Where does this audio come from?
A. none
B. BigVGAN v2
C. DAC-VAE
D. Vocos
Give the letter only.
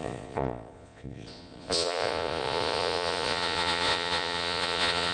D